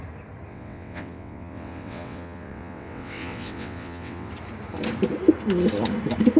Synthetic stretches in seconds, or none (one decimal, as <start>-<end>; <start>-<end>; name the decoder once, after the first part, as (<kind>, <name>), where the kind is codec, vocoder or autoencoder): 0.5-4.3 (vocoder, WaveNeXt)